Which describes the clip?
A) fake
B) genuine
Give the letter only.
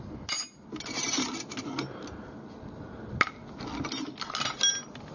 B